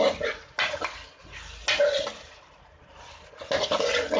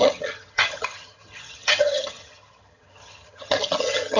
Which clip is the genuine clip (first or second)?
first